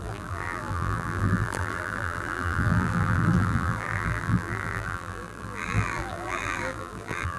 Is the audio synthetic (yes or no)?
yes